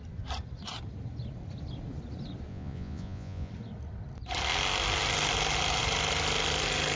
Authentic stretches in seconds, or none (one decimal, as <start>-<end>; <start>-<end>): 0.0-2.5; 3.5-7.0